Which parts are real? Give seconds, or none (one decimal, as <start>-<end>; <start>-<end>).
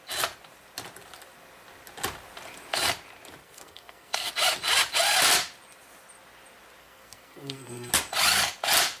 0.0-3.4; 4.3-6.8; 7.9-9.0